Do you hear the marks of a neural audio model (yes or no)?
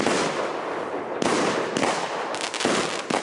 no